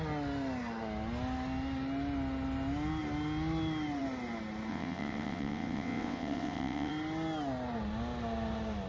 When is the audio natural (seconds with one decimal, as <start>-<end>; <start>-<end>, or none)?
0.0-4.7; 6.9-8.9